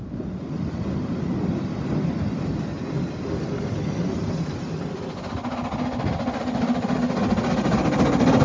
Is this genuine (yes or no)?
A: yes